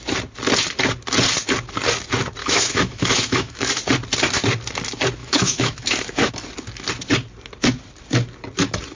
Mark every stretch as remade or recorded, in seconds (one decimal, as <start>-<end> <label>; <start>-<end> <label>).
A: 0.0-2.4 recorded; 2.4-3.7 remade; 3.7-5.2 recorded; 5.2-6.3 remade; 6.3-9.0 recorded